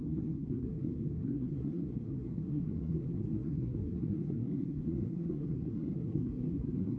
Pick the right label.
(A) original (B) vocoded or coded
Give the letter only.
B